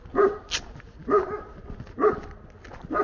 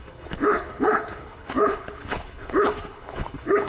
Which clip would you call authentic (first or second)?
first